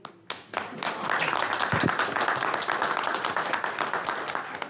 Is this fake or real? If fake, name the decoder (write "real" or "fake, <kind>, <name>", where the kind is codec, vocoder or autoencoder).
real